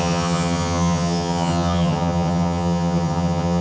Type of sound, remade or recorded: remade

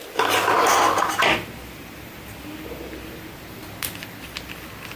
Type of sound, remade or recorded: recorded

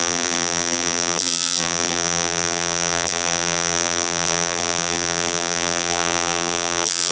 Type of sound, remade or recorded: remade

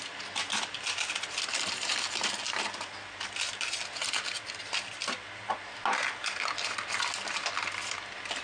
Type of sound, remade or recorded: recorded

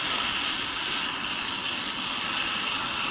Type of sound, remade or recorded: recorded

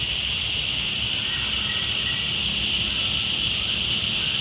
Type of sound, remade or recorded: recorded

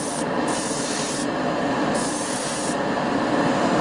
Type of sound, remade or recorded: remade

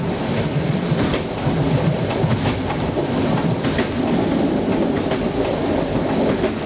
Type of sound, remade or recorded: recorded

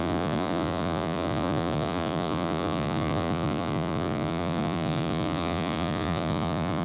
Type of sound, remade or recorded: remade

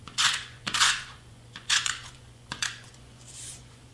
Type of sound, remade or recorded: remade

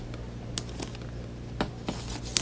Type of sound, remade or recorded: recorded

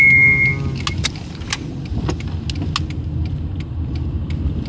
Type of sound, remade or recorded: recorded